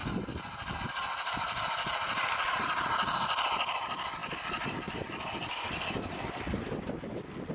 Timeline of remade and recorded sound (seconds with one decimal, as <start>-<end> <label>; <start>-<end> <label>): 0.0-7.5 recorded